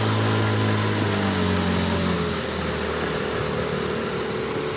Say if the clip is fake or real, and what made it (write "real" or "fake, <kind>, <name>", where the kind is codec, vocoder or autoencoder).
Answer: real